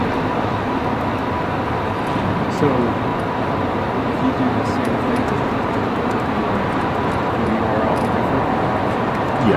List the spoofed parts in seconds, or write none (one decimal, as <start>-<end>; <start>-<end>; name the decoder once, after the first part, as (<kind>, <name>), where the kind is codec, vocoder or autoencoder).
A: 3.1-6.6 (vocoder, BigVGAN v2)